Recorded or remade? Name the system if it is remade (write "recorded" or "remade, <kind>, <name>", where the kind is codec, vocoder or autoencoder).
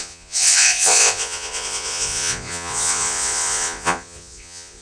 remade, vocoder, Vocos